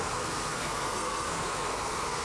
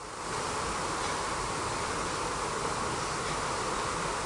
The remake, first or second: first